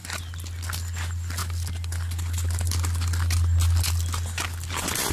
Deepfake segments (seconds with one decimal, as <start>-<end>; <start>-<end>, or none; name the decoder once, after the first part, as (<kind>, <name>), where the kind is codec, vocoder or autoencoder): none